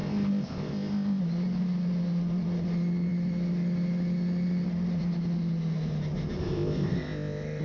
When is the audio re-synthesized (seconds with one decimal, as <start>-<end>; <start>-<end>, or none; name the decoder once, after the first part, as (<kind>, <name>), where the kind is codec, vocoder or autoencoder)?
0.0-1.2 (codec, ZipCodec); 6.4-7.6